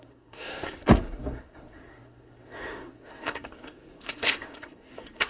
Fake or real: fake